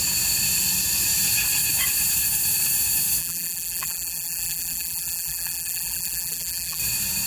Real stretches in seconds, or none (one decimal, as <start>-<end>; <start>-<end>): 0.0-3.2; 6.8-7.3